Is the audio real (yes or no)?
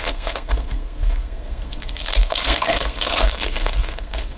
no